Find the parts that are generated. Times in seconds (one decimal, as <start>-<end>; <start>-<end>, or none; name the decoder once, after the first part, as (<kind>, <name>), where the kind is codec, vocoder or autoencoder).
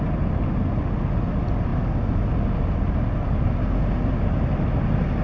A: none